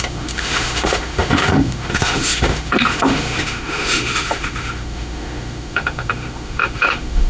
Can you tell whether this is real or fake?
fake